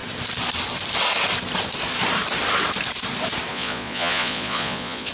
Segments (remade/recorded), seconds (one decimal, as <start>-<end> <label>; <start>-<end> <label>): 0.0-3.5 recorded; 3.5-5.1 remade